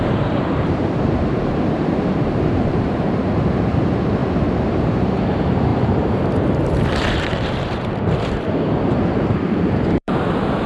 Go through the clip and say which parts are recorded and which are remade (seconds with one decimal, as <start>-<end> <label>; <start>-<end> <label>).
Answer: 0.0-4.2 remade; 4.2-4.7 recorded; 4.7-10.7 remade